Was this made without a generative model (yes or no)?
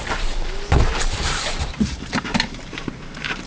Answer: no